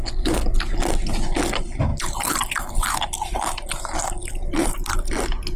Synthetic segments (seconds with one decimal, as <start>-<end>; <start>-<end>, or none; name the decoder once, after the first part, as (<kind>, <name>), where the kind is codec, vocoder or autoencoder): none